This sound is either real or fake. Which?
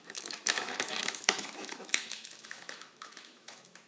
fake